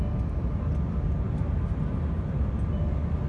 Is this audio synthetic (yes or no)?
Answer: no